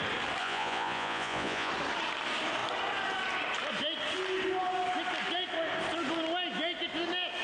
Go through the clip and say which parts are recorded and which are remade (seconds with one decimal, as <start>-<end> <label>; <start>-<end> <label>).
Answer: 0.0-0.4 recorded; 0.4-1.7 remade; 1.7-7.4 recorded